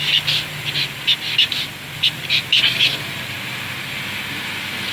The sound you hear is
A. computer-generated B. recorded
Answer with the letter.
B